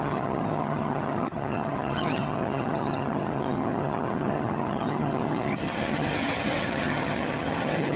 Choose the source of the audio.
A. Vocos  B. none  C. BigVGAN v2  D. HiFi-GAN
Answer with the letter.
D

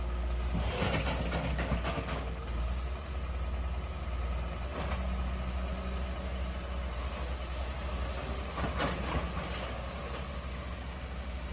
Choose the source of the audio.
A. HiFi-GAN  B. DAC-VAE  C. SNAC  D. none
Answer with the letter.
D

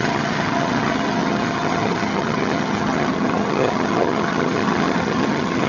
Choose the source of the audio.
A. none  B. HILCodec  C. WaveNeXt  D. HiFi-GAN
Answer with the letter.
D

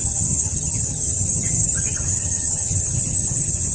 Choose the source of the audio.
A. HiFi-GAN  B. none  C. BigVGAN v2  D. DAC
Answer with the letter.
A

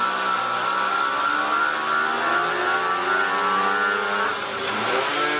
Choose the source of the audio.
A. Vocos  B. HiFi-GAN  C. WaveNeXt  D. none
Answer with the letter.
D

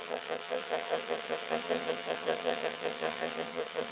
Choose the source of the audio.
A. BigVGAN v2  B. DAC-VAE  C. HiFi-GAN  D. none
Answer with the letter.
C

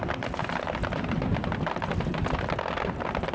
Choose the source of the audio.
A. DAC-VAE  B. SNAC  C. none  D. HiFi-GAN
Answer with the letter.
C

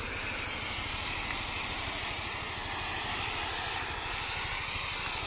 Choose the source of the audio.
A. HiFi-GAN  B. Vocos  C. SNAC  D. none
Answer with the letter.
D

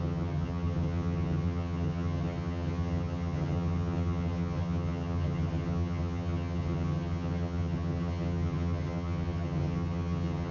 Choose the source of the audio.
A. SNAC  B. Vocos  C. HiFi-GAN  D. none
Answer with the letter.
C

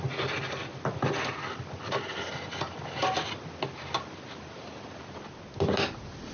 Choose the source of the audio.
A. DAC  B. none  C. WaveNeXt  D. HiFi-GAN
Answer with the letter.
B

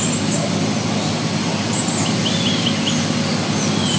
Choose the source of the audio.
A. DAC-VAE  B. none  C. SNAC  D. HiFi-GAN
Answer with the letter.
B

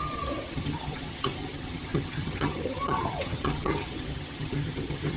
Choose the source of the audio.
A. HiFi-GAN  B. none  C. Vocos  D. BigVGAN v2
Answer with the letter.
A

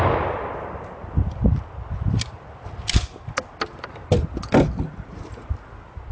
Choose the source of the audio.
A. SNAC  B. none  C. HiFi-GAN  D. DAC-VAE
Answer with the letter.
B